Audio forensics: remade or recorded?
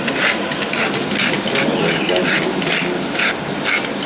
recorded